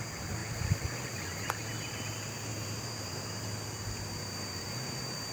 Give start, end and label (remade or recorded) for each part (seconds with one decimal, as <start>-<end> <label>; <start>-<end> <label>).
0.0-5.3 recorded